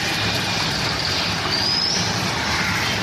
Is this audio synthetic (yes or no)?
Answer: no